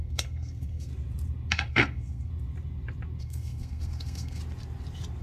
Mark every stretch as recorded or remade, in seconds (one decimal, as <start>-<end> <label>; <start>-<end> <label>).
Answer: 0.0-0.9 remade; 0.9-1.5 recorded; 1.5-2.3 remade; 2.3-3.2 recorded; 3.2-4.4 remade; 4.4-5.2 recorded